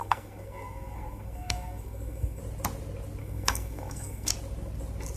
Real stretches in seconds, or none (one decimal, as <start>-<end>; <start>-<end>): 2.4-3.2; 4.3-5.2